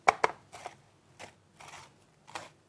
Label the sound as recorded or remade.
recorded